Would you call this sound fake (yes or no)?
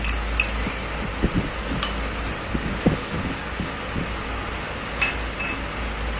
no